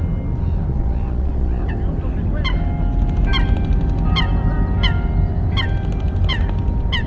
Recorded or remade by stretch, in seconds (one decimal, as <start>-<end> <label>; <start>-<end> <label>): 0.0-0.7 recorded; 0.7-1.6 remade; 1.6-7.1 recorded